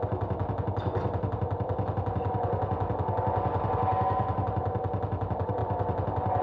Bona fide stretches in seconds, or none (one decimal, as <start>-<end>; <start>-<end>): 0.0-6.4